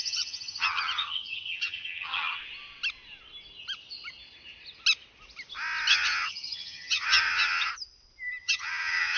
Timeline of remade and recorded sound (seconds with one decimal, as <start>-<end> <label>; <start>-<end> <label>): 0.0-2.4 remade; 2.4-5.9 recorded; 5.9-7.7 remade; 7.7-8.4 recorded; 8.4-9.2 remade